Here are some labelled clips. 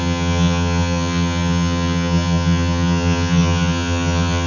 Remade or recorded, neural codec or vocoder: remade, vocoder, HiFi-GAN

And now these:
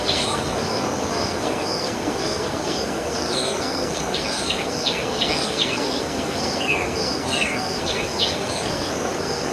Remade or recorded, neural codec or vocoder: remade, codec, SNAC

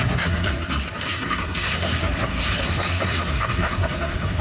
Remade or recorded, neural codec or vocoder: remade, codec, SNAC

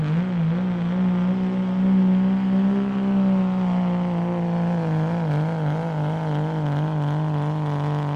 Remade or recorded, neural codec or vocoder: recorded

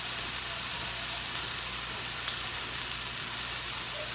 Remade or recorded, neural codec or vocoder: recorded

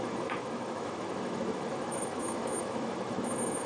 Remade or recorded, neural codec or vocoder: remade, autoencoder, DAC-VAE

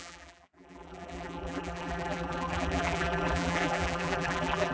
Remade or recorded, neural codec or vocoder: remade, vocoder, BigVGAN v2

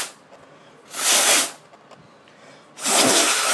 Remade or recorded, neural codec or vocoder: recorded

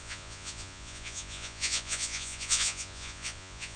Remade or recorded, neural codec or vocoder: remade, vocoder, Vocos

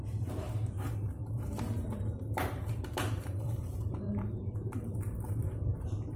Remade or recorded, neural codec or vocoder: remade, vocoder, BigVGAN v2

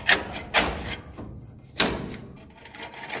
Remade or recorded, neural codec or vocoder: recorded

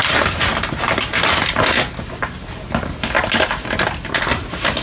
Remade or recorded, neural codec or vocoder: recorded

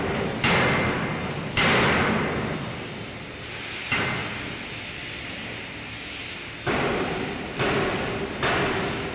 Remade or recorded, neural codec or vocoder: recorded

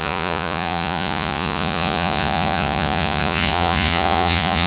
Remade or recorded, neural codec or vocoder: remade, vocoder, Vocos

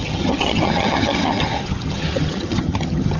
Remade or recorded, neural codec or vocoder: remade, vocoder, HiFi-GAN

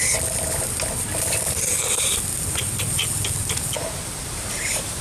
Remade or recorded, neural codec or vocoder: recorded